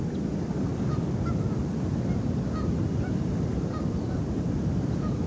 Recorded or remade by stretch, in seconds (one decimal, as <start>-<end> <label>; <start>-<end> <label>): 0.0-5.3 recorded